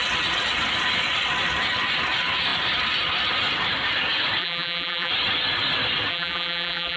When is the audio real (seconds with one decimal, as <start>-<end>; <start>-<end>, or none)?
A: 0.0-4.4; 5.1-6.1